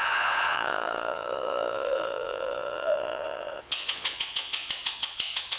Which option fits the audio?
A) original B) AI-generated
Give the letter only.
B